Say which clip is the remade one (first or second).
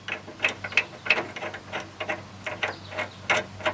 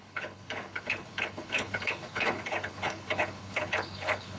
second